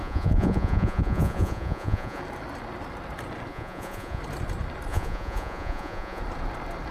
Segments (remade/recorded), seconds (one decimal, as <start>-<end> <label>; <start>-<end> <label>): 0.0-2.2 remade; 2.2-3.5 recorded; 3.5-4.2 remade; 4.2-4.9 recorded; 4.9-6.2 remade; 6.2-6.9 recorded

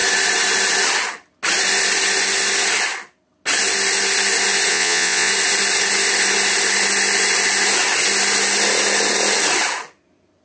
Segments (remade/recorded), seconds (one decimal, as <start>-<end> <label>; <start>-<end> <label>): 0.0-4.7 recorded; 4.7-5.3 remade; 5.3-10.4 recorded

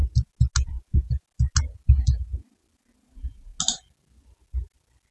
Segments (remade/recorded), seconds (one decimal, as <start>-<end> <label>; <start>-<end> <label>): 0.0-5.1 recorded

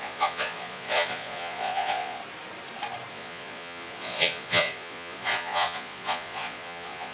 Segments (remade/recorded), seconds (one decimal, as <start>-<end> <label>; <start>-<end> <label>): 0.0-2.2 remade; 2.2-3.1 recorded; 3.1-7.1 remade